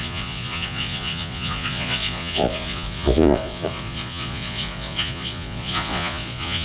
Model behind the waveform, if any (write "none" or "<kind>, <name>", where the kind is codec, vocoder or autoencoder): vocoder, Vocos